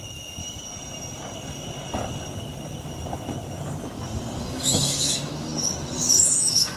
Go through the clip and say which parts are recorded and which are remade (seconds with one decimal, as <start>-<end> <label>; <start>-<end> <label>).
0.0-0.4 remade; 0.4-4.5 recorded; 4.5-5.5 remade; 5.5-6.2 recorded; 6.2-6.8 remade